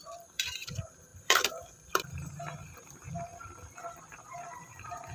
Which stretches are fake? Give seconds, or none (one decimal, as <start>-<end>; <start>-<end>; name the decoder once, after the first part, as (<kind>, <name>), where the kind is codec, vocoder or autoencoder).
0.0-3.3 (vocoder, BigVGAN v2); 4.1-5.1